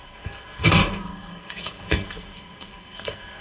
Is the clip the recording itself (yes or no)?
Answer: no